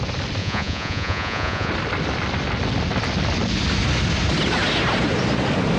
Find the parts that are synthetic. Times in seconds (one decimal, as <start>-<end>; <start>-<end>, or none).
0.4-1.7